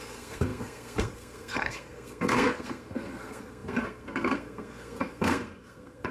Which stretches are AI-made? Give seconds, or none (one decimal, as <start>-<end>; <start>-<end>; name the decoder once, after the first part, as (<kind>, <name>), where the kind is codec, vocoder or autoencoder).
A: 0.0-6.1 (codec, SNAC)